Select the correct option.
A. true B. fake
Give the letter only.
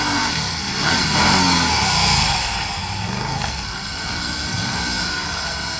B